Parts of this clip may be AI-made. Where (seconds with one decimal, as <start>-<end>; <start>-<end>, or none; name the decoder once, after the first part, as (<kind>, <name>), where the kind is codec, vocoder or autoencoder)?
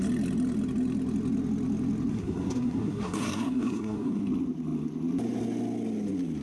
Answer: 2.1-4.2 (codec, SNAC)